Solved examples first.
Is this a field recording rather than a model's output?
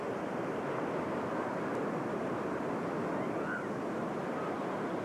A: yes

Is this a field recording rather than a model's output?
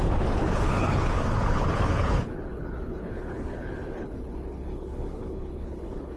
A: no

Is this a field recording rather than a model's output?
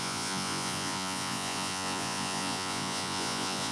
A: no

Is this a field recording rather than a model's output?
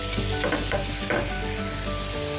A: yes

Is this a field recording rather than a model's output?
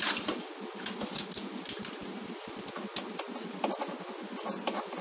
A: yes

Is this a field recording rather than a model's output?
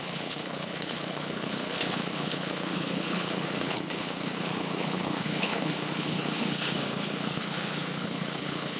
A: no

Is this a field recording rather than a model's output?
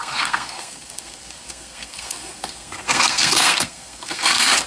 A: no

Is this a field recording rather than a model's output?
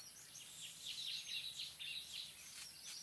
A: yes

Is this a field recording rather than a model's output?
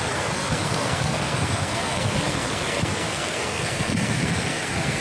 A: no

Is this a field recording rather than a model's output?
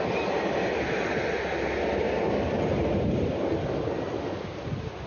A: yes